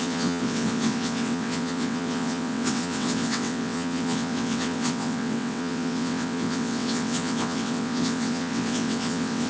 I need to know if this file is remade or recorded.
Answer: remade